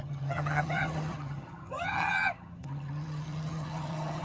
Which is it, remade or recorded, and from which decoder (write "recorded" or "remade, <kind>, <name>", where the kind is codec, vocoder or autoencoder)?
remade, vocoder, HiFi-GAN